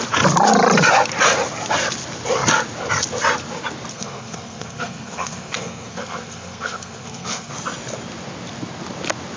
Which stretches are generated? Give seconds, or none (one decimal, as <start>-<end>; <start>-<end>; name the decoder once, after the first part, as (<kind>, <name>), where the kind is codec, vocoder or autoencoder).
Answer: 3.9-7.5 (codec, SNAC)